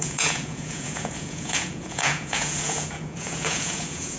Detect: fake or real fake